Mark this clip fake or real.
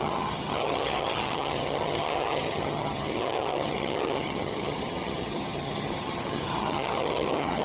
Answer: fake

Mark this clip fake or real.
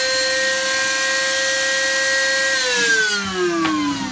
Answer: real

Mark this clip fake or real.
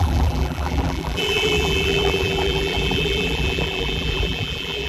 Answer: fake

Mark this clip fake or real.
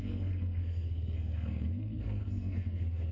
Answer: fake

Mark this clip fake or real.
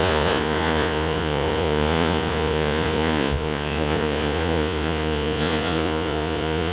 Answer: fake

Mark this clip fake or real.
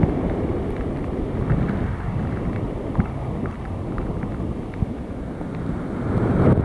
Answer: fake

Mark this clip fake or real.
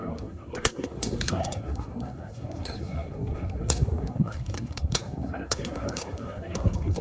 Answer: fake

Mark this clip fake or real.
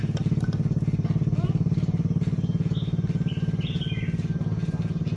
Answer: real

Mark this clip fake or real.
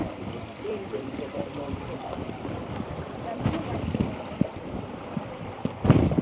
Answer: fake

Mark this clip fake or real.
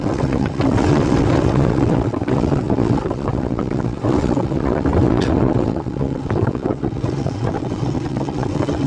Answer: fake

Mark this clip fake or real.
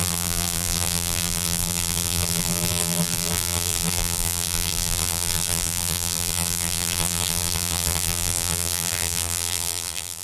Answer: fake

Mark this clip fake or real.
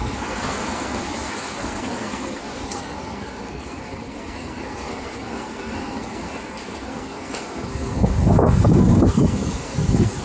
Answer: fake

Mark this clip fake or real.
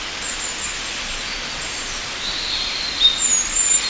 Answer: real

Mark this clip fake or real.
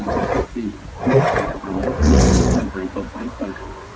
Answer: fake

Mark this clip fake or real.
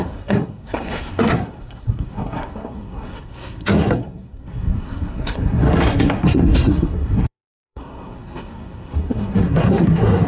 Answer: fake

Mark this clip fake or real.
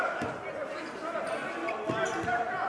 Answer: fake